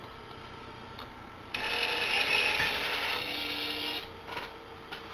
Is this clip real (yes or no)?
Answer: yes